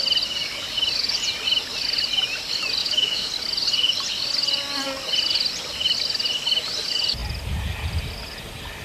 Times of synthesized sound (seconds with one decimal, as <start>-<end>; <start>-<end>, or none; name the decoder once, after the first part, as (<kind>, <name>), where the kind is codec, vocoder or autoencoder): 2.8-3.3 (autoencoder, DAC-VAE)